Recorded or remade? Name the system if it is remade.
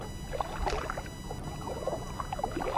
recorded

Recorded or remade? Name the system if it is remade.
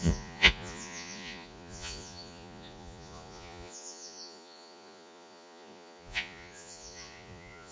remade, vocoder, Vocos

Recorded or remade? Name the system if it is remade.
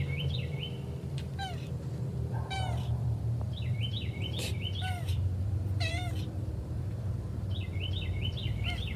remade, vocoder, BigVGAN v2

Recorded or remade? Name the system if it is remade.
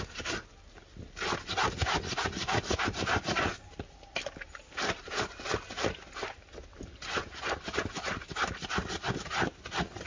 recorded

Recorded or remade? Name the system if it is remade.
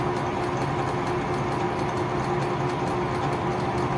recorded